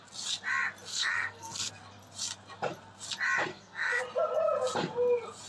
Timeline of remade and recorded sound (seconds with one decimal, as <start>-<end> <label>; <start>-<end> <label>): 0.0-0.9 recorded; 0.9-1.7 remade; 1.7-3.5 recorded; 3.5-4.0 remade; 4.0-5.5 recorded